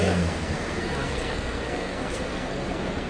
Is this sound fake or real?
fake